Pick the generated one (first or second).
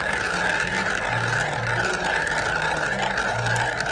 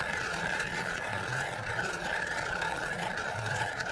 second